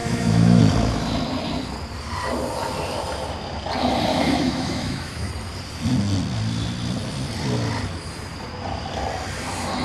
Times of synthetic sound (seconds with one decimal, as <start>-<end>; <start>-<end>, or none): 0.0-0.6; 4.1-5.3